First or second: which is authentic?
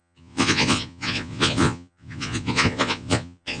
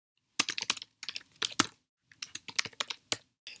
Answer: second